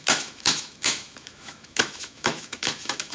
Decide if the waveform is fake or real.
fake